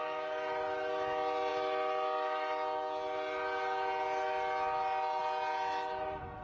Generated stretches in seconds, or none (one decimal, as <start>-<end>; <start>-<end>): none